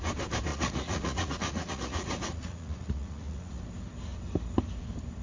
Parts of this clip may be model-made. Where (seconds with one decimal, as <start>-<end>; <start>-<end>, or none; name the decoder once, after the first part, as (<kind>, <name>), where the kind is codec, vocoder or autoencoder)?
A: 0.5-3.6 (vocoder, Vocos)